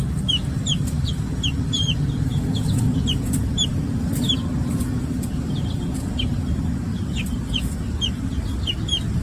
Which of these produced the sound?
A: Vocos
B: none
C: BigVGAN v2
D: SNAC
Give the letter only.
B